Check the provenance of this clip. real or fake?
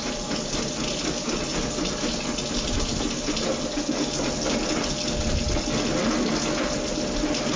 real